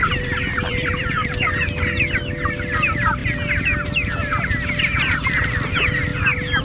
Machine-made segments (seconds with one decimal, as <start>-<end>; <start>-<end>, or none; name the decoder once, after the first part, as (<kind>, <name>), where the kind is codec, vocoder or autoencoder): 0.0-1.7 (vocoder, BigVGAN v2)